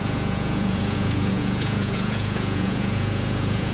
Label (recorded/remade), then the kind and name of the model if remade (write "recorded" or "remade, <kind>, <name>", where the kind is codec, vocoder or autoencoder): remade, vocoder, Vocos